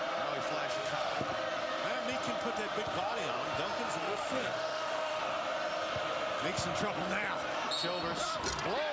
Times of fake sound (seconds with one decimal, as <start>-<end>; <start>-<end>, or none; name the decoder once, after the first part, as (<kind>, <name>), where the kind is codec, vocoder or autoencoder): 0.7-1.2 (autoencoder, DAC-VAE); 4.0-5.2